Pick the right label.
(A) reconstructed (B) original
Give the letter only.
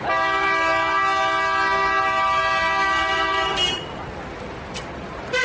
B